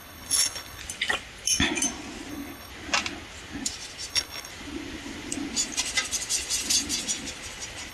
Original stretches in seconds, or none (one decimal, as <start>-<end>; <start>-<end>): 0.8-2.3; 2.7-4.1; 4.5-7.9